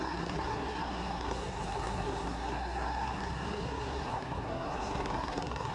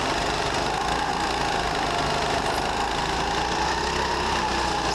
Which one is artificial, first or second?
first